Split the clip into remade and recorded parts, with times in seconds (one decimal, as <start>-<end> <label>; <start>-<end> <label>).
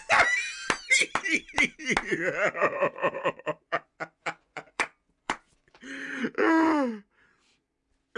0.0-2.1 recorded; 2.1-6.9 remade; 6.9-8.2 recorded